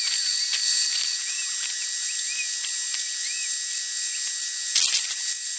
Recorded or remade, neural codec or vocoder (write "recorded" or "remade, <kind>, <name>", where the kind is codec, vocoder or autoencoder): recorded